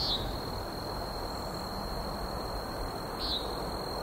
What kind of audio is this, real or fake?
real